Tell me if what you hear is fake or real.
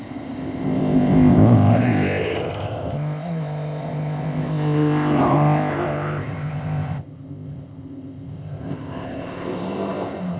fake